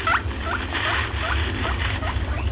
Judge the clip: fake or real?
real